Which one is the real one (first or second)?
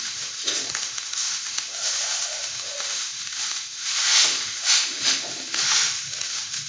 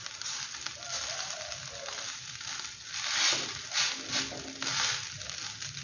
second